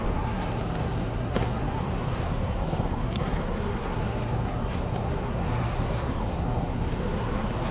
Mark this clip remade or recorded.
remade